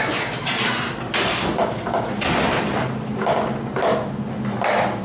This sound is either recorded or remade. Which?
recorded